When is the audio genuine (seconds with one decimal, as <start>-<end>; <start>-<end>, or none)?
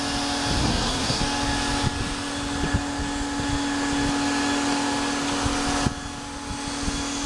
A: 0.0-0.6; 1.2-7.3